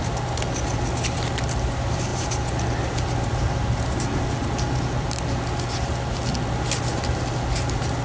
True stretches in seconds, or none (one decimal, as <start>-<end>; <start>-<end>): 0.0-8.0